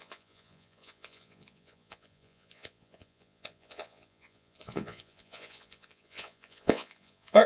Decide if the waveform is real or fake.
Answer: fake